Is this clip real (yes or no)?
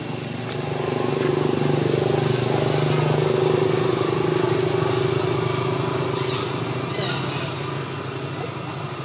yes